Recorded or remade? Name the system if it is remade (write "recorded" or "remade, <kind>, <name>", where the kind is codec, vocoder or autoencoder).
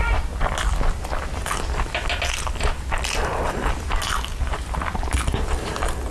recorded